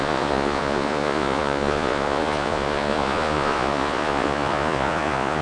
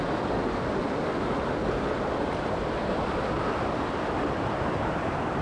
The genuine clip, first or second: second